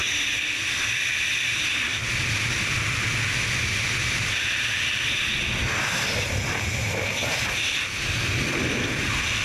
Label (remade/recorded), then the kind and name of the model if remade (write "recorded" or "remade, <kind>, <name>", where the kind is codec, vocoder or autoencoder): recorded